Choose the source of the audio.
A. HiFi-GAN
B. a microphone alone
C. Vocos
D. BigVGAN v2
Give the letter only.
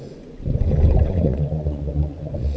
C